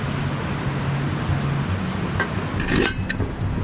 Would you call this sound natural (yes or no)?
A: yes